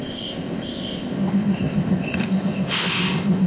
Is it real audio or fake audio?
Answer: fake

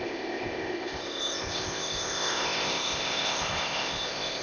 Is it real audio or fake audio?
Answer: fake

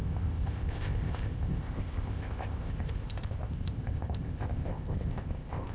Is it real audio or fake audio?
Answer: fake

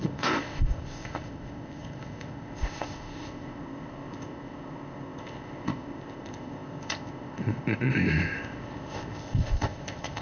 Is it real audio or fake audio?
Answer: fake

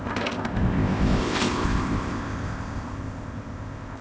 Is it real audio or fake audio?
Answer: fake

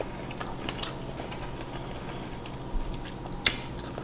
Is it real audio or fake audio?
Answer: real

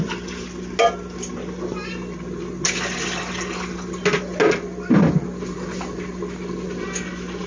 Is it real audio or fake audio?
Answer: real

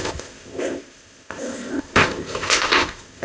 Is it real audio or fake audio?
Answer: fake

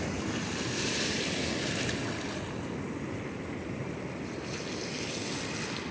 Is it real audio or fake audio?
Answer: real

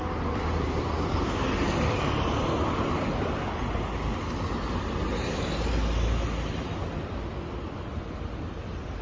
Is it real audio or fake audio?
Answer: real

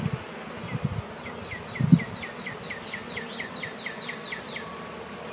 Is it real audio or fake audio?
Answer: real